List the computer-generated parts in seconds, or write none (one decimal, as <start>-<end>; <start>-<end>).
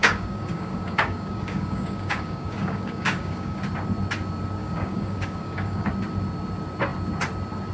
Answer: 0.0-3.6; 4.6-5.9